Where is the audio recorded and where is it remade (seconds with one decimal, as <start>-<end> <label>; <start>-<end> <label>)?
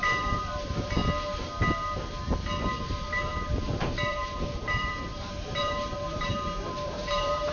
0.0-1.0 remade; 1.0-2.8 recorded; 2.8-7.5 remade